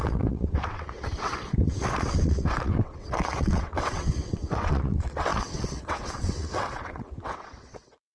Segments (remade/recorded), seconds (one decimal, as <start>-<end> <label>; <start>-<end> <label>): 0.0-8.1 remade